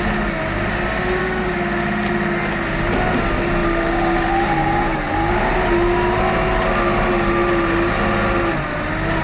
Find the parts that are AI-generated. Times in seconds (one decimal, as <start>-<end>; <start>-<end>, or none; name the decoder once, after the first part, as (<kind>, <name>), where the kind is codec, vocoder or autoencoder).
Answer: 1.2-1.8 (codec, DAC)